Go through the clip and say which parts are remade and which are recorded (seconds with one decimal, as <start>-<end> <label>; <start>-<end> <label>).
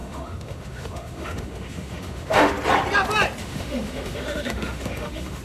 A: 0.0-2.5 remade; 2.5-3.4 recorded; 3.4-5.4 remade